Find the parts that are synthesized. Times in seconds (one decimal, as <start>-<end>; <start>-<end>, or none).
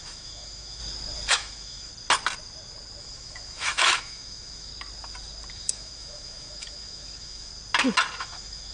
0.0-0.8; 1.3-1.9; 3.0-4.7; 5.5-7.5; 8.2-8.7